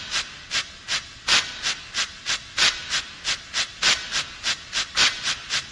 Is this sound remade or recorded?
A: recorded